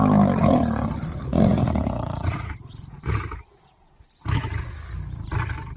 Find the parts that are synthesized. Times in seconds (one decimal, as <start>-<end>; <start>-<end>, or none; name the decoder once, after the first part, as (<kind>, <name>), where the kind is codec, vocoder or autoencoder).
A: 1.2-3.1 (vocoder, Vocos)